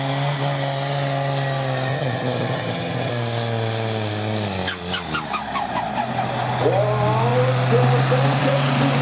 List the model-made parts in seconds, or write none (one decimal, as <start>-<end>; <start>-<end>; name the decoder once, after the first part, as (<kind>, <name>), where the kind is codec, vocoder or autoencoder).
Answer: 1.9-3.1 (vocoder, HiFi-GAN)